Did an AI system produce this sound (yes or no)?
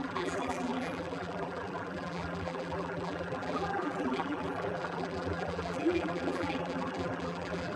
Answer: yes